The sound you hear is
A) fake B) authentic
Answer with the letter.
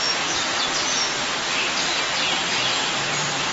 B